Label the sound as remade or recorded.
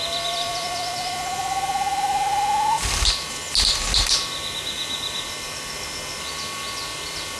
recorded